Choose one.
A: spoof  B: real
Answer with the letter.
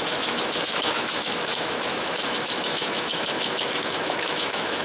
A